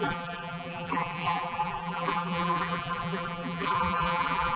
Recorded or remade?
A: remade